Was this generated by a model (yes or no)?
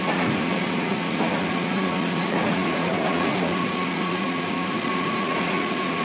yes